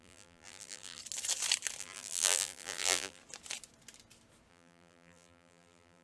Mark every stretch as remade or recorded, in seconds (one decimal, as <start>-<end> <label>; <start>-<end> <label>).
0.0-1.0 remade; 1.0-1.8 recorded; 1.8-3.2 remade; 3.2-4.5 recorded; 4.5-6.0 remade